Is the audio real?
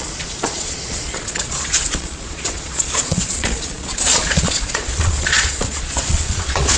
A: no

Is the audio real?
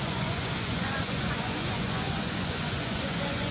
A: no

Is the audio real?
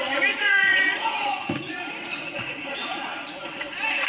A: no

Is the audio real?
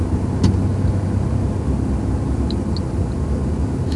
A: yes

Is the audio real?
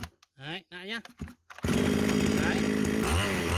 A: yes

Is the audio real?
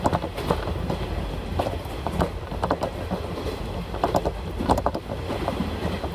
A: yes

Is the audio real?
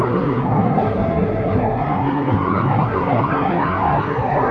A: no